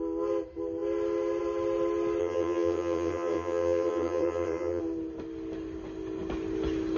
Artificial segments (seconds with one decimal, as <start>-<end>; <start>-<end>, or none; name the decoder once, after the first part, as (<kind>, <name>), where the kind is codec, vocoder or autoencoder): 2.2-4.8 (vocoder, HiFi-GAN)